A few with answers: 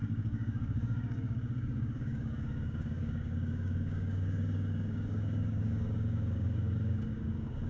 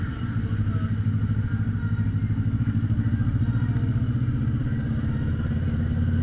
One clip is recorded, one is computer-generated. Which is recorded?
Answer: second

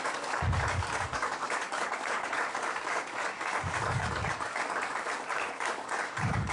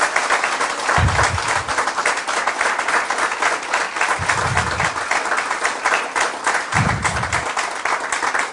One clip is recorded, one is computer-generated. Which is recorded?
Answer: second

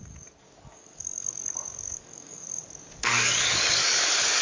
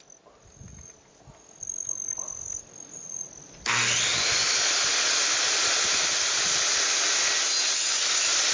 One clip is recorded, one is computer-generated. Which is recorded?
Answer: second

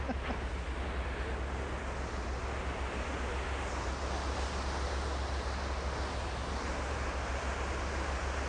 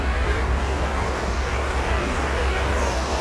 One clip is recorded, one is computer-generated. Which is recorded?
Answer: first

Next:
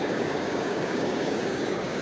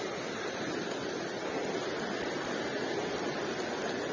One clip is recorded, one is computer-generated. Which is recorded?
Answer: second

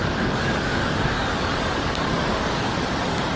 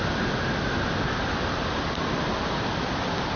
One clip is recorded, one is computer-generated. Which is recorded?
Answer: second